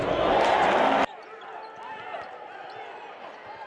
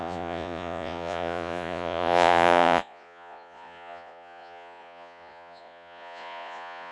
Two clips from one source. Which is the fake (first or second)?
second